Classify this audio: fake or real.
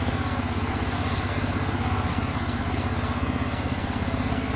fake